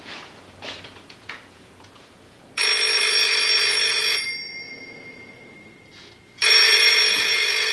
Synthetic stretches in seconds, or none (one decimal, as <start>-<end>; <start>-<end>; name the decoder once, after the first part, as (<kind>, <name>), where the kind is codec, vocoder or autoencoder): 0.0-2.6 (vocoder, Vocos); 3.9-7.7